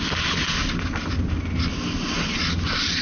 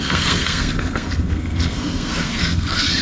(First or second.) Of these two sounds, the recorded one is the first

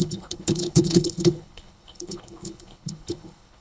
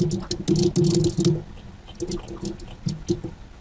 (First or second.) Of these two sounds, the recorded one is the second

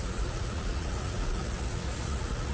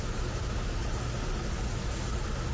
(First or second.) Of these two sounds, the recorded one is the second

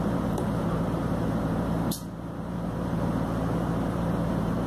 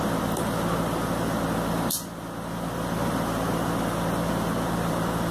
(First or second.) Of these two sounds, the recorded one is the second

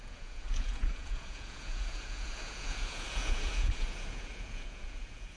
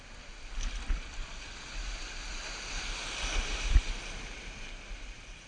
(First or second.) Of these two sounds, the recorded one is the second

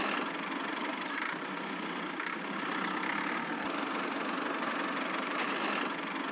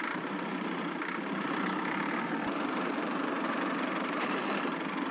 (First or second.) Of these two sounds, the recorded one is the first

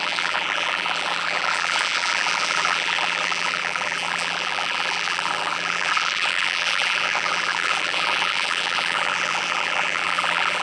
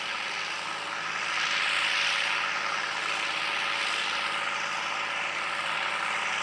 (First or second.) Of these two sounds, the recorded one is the second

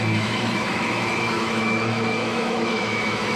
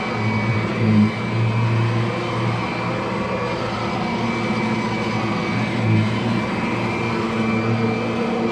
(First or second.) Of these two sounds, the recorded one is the second